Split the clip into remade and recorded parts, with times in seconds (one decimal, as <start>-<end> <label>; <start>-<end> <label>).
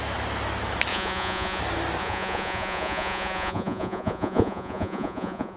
0.0-0.9 recorded; 0.9-1.6 remade; 1.6-2.0 recorded; 2.0-5.6 remade